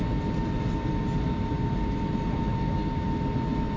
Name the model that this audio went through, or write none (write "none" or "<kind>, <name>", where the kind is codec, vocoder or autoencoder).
none